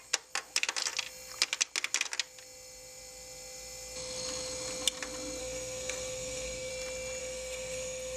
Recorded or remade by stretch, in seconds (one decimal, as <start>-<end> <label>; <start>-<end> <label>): 0.0-5.4 recorded; 5.4-6.7 remade; 6.7-7.2 recorded; 7.2-8.2 remade